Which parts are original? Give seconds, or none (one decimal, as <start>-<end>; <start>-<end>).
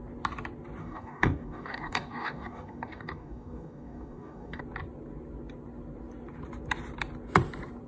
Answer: 0.0-0.8; 4.6-7.9